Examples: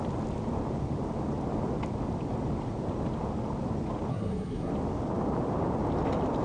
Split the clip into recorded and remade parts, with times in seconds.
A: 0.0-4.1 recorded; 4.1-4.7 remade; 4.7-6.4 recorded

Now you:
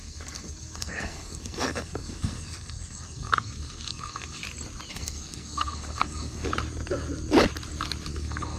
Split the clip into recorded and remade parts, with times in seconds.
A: 0.0-4.4 remade; 4.4-4.9 recorded; 4.9-6.5 remade; 6.5-8.1 recorded; 8.1-8.6 remade

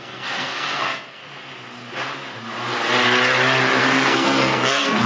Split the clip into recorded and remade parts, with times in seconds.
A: 0.0-1.2 remade; 1.2-3.8 recorded; 3.8-5.1 remade

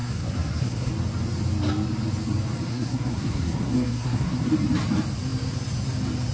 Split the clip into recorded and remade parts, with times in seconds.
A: 0.0-0.9 remade; 0.9-2.7 recorded; 2.7-4.5 remade; 4.5-6.3 recorded

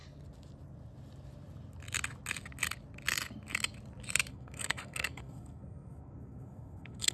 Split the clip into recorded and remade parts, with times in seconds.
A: 0.0-4.3 recorded; 4.3-7.1 remade

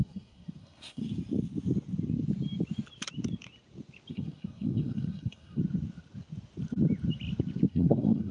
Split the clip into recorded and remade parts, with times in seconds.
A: 0.0-1.0 remade; 1.0-4.1 recorded; 4.1-5.6 remade; 5.6-7.7 recorded; 7.7-8.3 remade

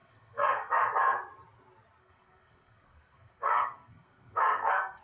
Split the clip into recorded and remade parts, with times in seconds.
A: 0.0-0.8 remade; 0.8-2.0 recorded; 2.0-5.0 remade